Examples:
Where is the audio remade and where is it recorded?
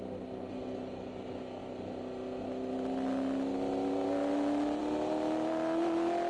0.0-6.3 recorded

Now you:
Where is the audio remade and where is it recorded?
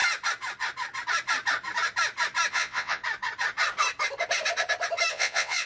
0.0-2.5 recorded; 2.5-3.0 remade; 3.0-5.1 recorded; 5.1-5.7 remade